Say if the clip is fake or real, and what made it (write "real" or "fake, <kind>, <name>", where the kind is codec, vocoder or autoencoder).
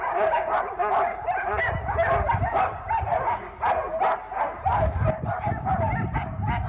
real